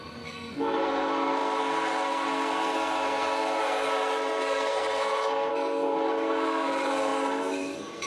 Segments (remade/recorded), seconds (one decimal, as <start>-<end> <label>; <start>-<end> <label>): 0.0-8.1 remade